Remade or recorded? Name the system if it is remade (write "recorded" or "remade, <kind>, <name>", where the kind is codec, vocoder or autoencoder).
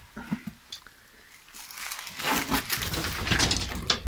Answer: recorded